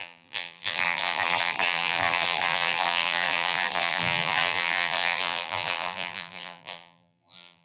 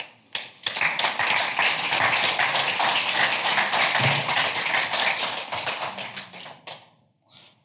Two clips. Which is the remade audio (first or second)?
first